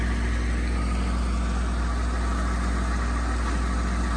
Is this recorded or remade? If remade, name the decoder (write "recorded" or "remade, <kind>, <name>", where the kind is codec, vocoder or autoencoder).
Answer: recorded